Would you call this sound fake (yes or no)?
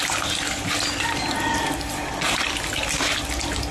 no